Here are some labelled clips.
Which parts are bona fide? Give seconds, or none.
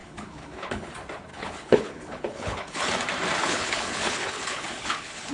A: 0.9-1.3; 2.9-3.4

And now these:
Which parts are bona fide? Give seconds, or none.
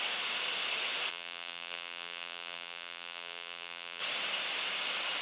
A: 0.0-1.1; 4.0-5.2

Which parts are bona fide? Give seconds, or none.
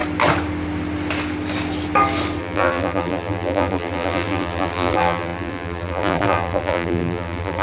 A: 0.0-2.4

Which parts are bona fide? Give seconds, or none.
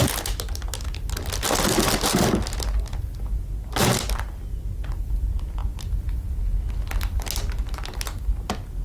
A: 0.0-8.8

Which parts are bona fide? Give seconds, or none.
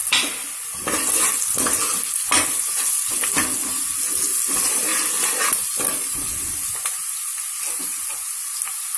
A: 1.2-4.9; 6.4-9.0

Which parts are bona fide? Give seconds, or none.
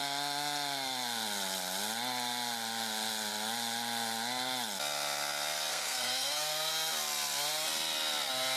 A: 0.0-5.7; 6.7-8.6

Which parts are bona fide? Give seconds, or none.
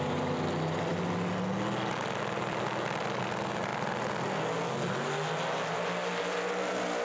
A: 0.0-7.0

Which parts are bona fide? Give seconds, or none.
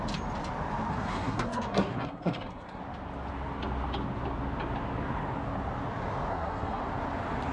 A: 0.0-0.9; 2.8-6.3; 6.8-7.5